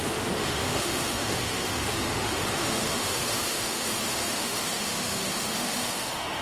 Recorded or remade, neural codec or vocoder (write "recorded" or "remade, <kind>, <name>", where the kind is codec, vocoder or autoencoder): remade, autoencoder, DAC-VAE